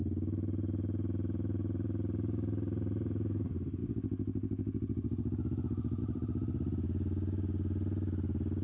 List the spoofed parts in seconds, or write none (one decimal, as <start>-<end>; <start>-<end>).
0.0-3.8; 6.0-8.6